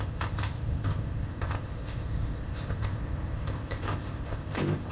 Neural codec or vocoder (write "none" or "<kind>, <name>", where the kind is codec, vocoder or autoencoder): codec, ZipCodec